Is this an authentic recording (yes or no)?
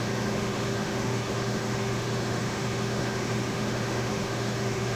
no